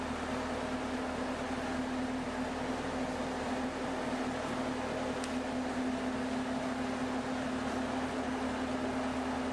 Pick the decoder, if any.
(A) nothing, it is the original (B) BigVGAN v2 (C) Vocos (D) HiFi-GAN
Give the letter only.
A